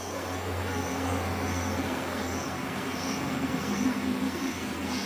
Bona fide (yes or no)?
no